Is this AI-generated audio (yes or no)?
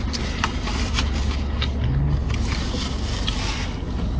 no